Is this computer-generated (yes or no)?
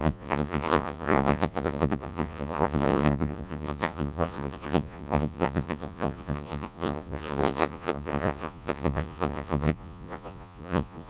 yes